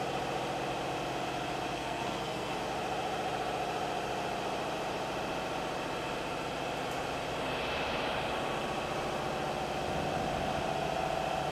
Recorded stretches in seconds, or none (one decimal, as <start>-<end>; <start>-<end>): 0.0-1.7; 2.6-11.5